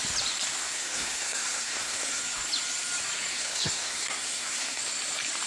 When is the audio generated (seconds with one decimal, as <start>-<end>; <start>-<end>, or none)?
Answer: 0.6-2.2; 3.3-4.8